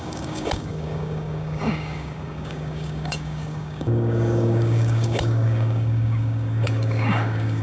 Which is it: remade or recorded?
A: remade